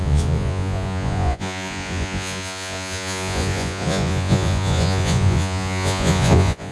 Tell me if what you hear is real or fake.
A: fake